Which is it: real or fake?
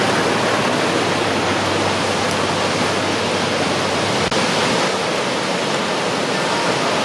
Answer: real